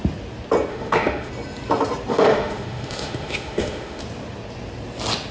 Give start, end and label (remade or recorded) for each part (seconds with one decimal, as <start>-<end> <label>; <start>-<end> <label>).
0.0-0.7 recorded; 0.7-1.3 remade; 1.3-2.1 recorded; 2.1-4.0 remade; 4.0-5.3 recorded